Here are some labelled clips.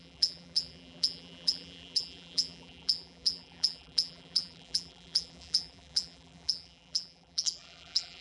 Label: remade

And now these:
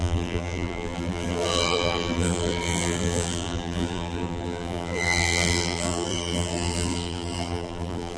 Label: remade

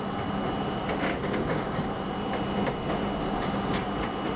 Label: recorded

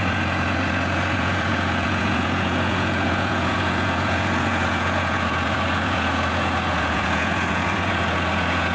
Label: remade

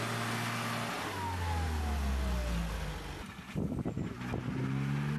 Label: recorded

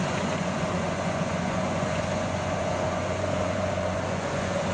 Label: remade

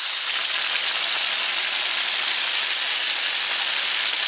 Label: recorded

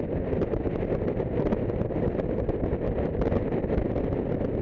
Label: recorded